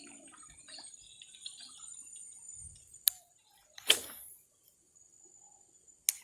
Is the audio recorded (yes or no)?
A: yes